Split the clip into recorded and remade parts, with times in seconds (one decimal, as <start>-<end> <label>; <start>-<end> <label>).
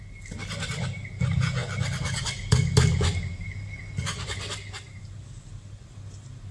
0.0-6.5 recorded